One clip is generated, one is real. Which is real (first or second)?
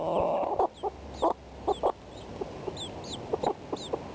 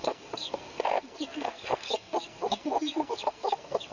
first